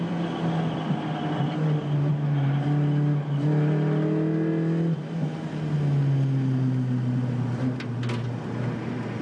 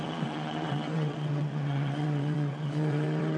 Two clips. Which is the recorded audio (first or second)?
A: first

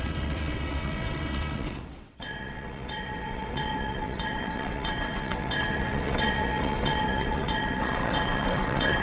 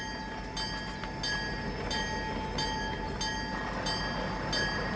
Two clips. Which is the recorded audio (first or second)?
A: second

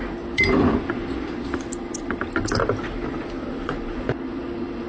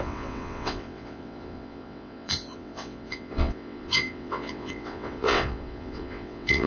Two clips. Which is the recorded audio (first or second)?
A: first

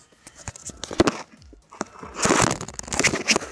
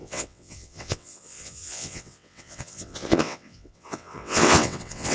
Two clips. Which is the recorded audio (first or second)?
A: first